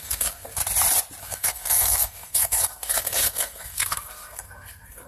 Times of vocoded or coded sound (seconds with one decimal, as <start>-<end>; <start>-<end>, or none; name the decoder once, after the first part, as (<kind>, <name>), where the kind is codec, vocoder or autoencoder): 0.0-0.6 (codec, SNAC); 1.2-5.1